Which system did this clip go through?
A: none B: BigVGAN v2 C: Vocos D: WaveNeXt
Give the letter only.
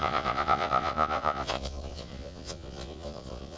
C